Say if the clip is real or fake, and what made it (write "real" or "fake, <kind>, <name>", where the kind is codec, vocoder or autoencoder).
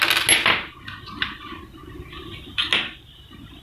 real